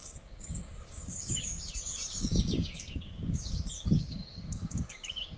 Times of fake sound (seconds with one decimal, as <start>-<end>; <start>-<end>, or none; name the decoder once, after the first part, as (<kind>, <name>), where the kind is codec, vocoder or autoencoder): 0.0-5.4 (codec, DAC)